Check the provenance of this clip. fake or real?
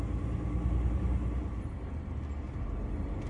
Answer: real